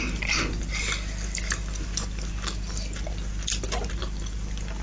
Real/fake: fake